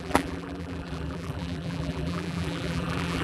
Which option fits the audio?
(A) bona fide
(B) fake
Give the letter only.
B